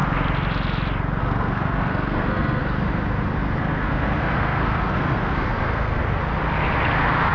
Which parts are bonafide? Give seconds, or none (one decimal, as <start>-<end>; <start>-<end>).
0.0-1.2; 2.6-3.6; 6.0-7.3